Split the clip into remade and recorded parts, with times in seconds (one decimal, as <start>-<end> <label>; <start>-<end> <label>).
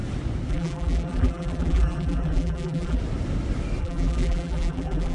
0.0-0.5 recorded; 0.5-3.0 remade; 3.0-3.8 recorded; 3.8-5.1 remade